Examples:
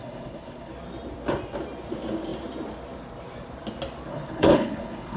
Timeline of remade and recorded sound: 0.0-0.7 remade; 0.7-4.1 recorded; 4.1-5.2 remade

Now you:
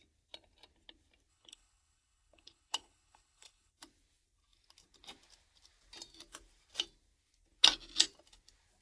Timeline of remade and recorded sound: 0.0-1.3 recorded; 1.3-3.7 remade; 3.7-8.8 recorded